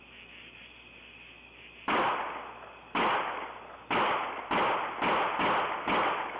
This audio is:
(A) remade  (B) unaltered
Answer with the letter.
B